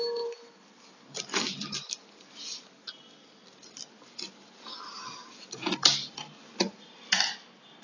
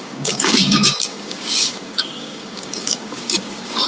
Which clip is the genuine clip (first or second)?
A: first